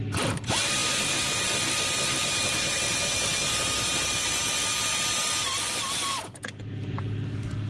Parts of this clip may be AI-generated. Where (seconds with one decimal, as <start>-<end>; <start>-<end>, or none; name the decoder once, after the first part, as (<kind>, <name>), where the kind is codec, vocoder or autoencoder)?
6.1-7.0 (vocoder, Vocos)